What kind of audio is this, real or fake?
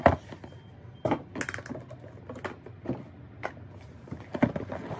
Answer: real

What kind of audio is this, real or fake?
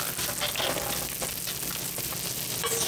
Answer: real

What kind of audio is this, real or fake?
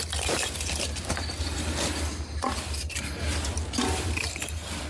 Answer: real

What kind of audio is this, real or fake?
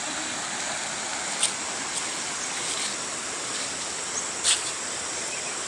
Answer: real